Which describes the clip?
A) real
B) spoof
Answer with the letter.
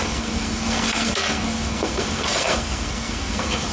B